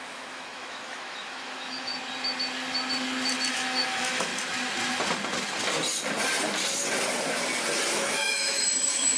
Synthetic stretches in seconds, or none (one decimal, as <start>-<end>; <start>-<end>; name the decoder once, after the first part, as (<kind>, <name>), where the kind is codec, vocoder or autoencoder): 0.0-1.9 (autoencoder, DAC-VAE); 3.5-4.3; 7.9-9.2

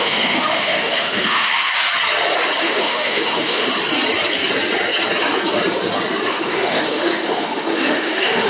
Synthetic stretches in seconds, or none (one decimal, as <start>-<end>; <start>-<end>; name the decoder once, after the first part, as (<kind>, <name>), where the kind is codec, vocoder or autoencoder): 0.0-1.8 (autoencoder, DAC-VAE); 2.6-3.7; 6.3-8.5

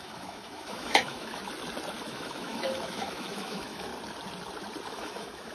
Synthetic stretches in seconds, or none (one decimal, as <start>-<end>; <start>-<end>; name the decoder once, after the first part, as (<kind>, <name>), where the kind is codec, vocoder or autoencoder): 0.0-1.4 (autoencoder, DAC-VAE); 2.0-3.9; 4.9-5.5

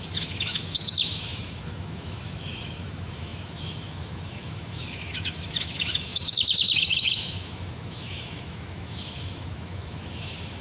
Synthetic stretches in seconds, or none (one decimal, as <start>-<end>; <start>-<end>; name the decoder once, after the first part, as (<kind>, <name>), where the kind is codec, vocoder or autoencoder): 0.0-10.6 (autoencoder, DAC-VAE)